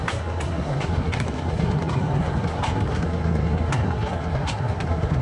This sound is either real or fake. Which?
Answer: fake